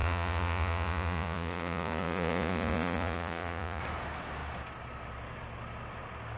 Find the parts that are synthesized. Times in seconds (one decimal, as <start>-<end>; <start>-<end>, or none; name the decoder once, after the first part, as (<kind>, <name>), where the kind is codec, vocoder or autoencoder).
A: 0.0-3.8 (vocoder, Vocos)